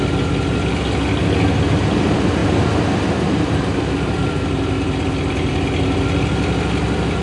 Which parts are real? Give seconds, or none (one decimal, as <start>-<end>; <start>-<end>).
0.0-2.4; 4.4-7.2